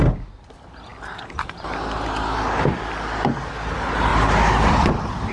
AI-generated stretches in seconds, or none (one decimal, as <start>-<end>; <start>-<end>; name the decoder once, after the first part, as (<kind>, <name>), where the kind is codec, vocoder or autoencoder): none